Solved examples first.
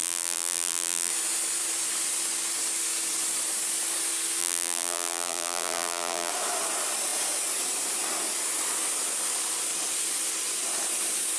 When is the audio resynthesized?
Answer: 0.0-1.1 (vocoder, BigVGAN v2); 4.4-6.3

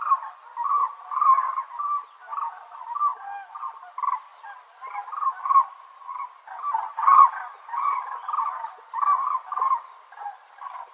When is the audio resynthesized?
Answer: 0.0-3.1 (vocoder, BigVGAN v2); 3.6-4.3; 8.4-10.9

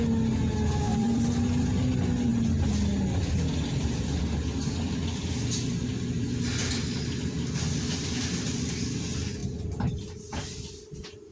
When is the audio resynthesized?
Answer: 0.9-1.9 (vocoder, BigVGAN v2); 9.4-10.0

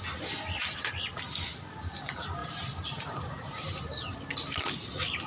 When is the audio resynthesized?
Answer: 2.4-3.8 (vocoder, BigVGAN v2)

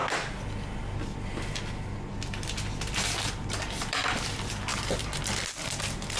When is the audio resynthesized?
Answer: 3.2-6.2 (vocoder, BigVGAN v2)

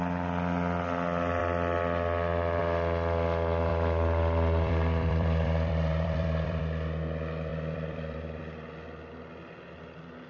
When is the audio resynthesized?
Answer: 3.7-6.6 (vocoder, BigVGAN v2); 7.5-8.4